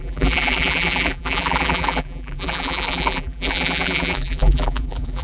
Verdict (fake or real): fake